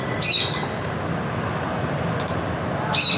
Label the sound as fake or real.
real